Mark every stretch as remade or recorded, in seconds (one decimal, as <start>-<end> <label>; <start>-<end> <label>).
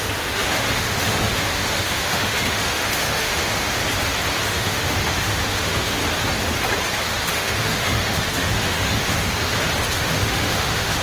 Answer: 0.0-3.8 remade; 3.8-4.3 recorded; 4.3-6.0 remade; 6.0-7.1 recorded; 7.1-9.5 remade; 9.5-10.0 recorded; 10.0-11.0 remade